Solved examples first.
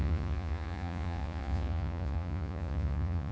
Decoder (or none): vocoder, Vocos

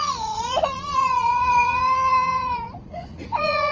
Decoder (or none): vocoder, Vocos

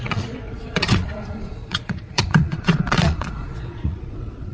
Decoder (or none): vocoder, Vocos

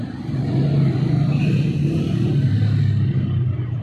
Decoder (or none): none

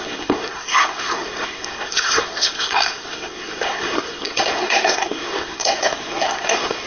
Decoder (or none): codec, SNAC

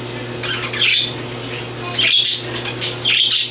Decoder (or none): none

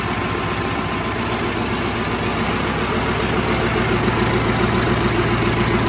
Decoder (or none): none